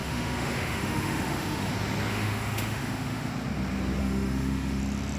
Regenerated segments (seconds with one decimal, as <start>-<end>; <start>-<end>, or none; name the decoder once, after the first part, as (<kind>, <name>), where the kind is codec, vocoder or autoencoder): 0.0-1.7 (autoencoder, DAC-VAE); 2.1-3.3; 4.0-4.8